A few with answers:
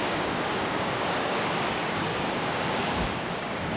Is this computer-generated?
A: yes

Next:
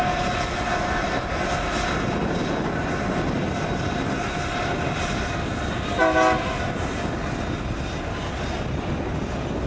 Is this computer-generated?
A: no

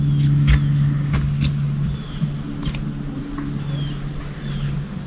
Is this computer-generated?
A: no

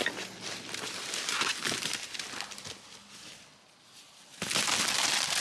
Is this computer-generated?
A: no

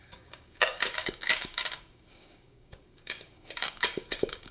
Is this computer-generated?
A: yes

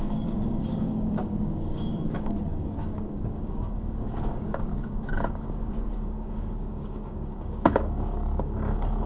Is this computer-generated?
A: yes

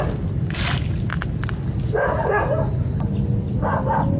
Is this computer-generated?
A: no